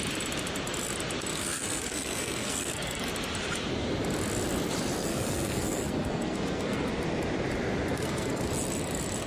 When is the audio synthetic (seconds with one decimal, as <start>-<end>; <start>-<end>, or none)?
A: 1.3-3.1; 5.1-6.9; 7.9-8.5